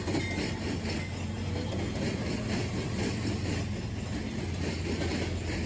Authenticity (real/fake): real